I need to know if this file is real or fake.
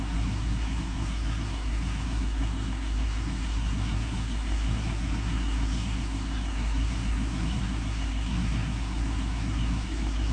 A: fake